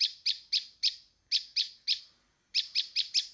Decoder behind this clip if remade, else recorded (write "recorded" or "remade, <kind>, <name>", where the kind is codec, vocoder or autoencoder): recorded